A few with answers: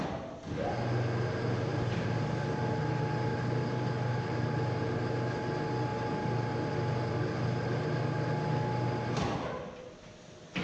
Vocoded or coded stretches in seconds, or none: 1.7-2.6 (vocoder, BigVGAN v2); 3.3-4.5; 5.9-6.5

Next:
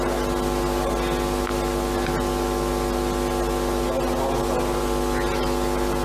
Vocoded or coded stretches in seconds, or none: none

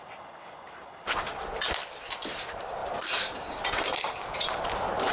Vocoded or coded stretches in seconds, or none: 2.8-5.1 (vocoder, BigVGAN v2)

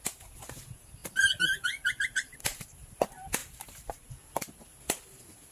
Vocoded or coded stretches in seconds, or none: 1.0-3.0 (vocoder, BigVGAN v2); 3.4-4.1; 4.7-5.5

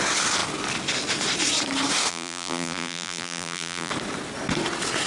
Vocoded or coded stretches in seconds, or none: 2.1-3.9 (vocoder, BigVGAN v2)